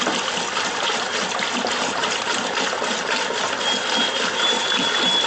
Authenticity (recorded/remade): recorded